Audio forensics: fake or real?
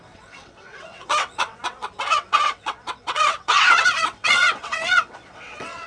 fake